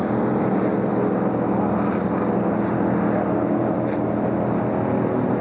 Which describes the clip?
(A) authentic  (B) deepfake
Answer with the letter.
A